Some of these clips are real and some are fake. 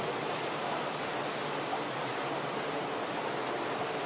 fake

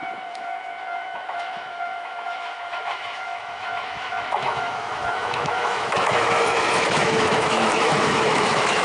fake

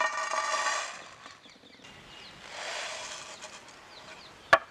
real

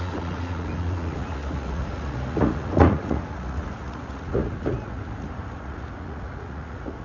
fake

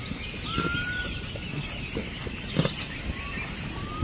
real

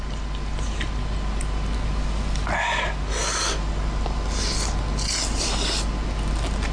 real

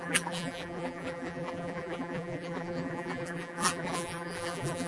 fake